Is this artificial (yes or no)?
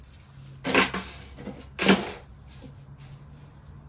no